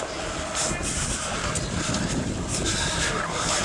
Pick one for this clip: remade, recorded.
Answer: recorded